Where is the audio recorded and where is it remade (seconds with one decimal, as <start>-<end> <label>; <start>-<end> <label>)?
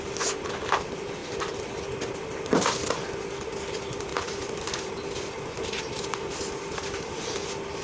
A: 0.0-1.2 recorded; 1.2-2.5 remade; 2.5-4.1 recorded; 4.1-7.3 remade; 7.3-7.8 recorded